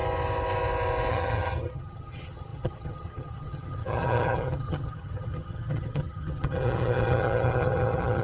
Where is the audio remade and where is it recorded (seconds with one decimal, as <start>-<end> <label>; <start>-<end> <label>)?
0.0-1.1 recorded; 1.1-8.2 remade